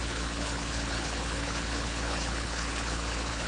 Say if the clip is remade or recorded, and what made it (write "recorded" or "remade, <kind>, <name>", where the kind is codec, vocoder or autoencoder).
remade, codec, HILCodec